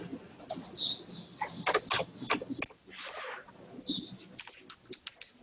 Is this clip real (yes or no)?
yes